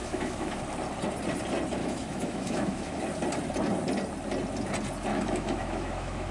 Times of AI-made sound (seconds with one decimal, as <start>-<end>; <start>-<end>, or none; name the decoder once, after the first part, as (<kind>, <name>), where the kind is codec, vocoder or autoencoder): 0.0-0.6 (autoencoder, DAC-VAE); 1.8-3.0; 5.1-6.3